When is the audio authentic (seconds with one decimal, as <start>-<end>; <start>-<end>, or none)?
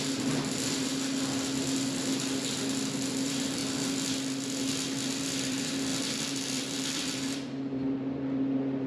0.9-3.1; 3.6-5.2